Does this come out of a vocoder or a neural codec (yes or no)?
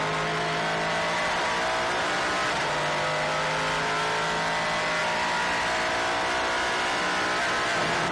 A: no